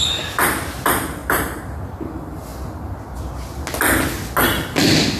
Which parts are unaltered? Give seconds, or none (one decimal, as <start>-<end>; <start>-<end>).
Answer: 0.0-1.2; 2.1-5.2